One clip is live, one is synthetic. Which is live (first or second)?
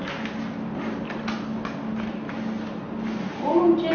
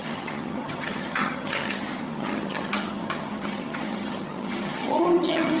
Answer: first